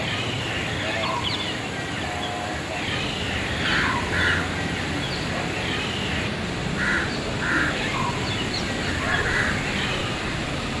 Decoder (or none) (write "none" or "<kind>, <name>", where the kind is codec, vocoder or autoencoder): none